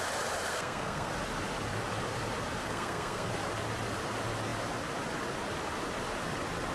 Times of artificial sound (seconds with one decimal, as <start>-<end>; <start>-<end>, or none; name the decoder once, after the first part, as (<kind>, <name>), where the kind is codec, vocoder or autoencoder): 0.5-1.1 (codec, SNAC); 2.6-3.3